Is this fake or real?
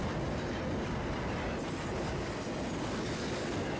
real